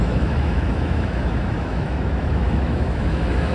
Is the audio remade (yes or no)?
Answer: yes